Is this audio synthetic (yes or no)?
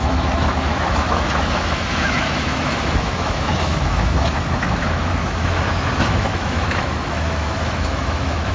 yes